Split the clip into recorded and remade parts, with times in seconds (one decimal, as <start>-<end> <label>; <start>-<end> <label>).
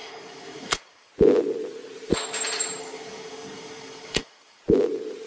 0.0-1.1 remade; 1.1-2.8 recorded; 2.8-4.6 remade; 4.6-5.3 recorded